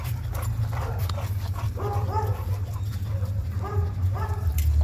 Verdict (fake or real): fake